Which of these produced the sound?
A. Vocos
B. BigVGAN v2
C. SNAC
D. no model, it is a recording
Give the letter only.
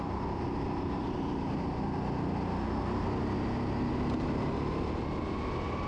D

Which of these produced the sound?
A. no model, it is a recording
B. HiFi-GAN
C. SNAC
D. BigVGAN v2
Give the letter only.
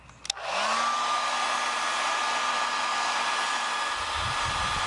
A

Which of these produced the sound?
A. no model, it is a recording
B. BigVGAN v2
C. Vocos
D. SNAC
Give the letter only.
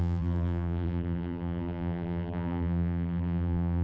B